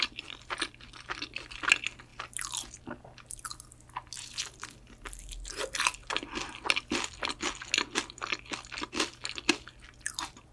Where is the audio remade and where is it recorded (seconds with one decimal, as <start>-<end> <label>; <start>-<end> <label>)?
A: 0.0-10.5 recorded